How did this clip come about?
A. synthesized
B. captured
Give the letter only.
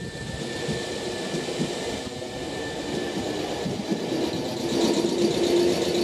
B